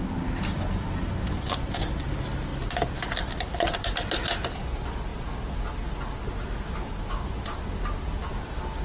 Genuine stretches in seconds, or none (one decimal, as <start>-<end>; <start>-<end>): 0.0-8.8